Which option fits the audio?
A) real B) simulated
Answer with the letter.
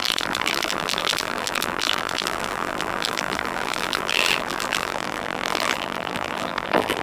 B